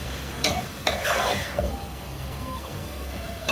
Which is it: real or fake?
fake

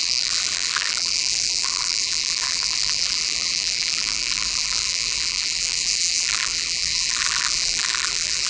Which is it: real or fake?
fake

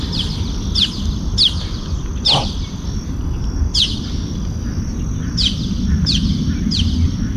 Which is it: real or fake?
real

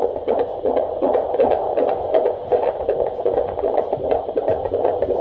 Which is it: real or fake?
fake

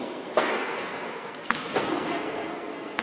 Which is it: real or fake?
fake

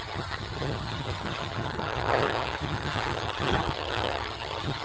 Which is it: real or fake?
fake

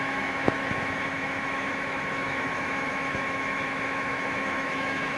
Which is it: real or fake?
fake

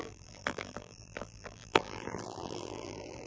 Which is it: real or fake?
fake